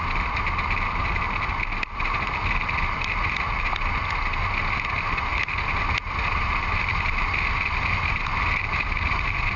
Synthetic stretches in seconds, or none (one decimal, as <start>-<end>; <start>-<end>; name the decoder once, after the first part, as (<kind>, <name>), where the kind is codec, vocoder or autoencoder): none